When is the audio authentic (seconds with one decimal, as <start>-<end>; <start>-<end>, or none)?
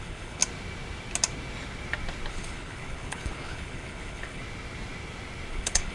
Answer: 0.4-2.3; 4.4-5.5